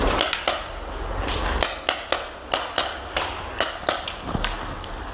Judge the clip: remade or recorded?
recorded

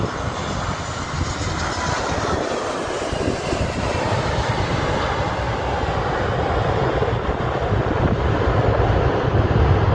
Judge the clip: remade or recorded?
recorded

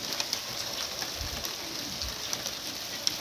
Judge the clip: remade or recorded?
recorded